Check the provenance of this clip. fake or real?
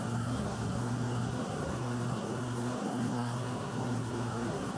fake